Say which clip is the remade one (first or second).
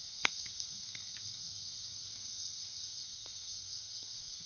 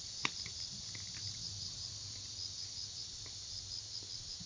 first